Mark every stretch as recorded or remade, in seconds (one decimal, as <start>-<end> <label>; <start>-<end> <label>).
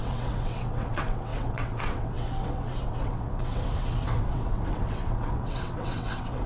0.0-6.5 remade